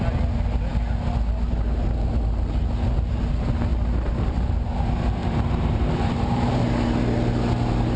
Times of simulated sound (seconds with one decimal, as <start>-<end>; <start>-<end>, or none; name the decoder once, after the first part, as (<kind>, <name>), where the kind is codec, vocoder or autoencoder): 3.7-4.2 (vocoder, BigVGAN v2); 5.2-6.7